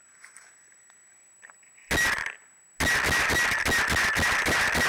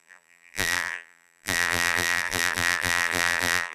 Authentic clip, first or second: first